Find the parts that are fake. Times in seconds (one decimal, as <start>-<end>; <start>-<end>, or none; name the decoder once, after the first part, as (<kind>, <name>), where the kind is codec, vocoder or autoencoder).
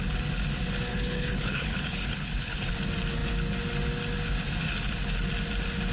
0.9-2.7 (codec, HILCodec)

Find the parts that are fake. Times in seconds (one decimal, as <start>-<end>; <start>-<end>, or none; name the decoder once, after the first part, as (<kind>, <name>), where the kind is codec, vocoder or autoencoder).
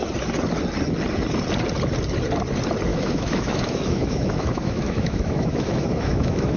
2.9-6.6 (autoencoder, DAC-VAE)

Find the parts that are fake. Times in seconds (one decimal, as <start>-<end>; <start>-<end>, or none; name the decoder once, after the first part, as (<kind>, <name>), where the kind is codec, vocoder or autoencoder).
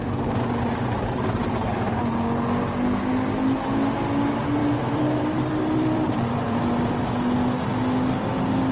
4.6-6.6 (vocoder, BigVGAN v2)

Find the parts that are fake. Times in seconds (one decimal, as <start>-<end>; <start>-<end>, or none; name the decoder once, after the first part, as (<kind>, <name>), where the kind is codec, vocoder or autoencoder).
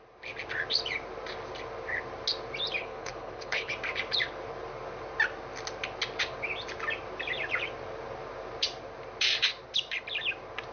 2.8-3.7 (codec, HILCodec)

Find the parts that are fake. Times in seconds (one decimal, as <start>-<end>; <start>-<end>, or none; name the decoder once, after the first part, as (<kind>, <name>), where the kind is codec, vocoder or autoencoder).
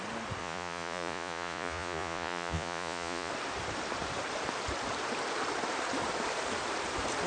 0.4-3.3 (vocoder, Vocos)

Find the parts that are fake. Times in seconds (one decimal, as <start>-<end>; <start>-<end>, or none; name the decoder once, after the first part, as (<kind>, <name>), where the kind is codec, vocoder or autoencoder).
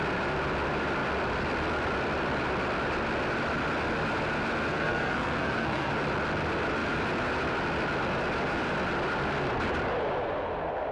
4.7-5.9 (codec, SNAC)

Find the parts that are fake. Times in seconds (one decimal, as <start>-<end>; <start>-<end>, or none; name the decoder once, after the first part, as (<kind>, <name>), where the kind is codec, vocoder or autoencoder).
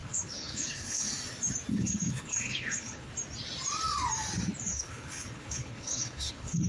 0.0-1.1 (codec, HILCodec); 1.7-3.1; 4.7-6.7